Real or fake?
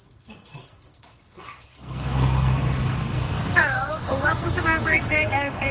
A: fake